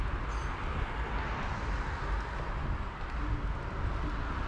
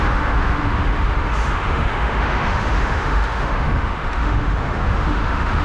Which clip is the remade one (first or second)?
second